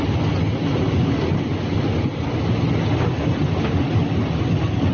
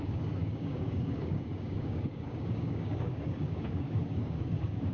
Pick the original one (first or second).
first